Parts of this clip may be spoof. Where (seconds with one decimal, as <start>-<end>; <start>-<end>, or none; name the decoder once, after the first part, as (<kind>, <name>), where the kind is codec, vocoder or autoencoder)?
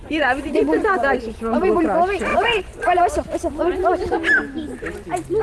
0.0-1.8 (vocoder, Vocos); 2.3-3.0